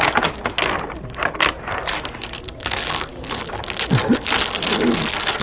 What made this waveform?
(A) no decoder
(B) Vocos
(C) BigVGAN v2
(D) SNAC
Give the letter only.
A